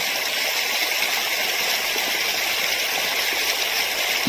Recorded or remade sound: recorded